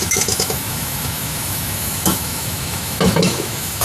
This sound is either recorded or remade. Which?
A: remade